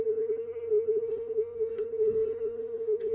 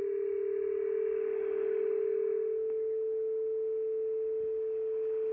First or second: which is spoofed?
first